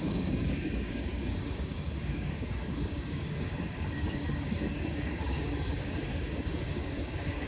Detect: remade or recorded remade